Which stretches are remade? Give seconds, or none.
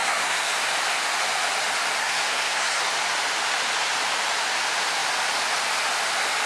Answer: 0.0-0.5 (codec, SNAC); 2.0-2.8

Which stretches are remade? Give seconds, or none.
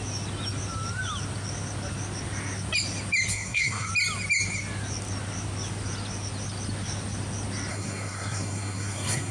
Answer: 3.3-3.9 (codec, SNAC); 7.7-9.3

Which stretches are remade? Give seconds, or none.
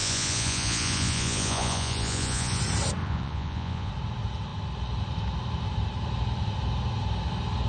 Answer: 0.0-2.6 (vocoder, Vocos); 3.0-3.9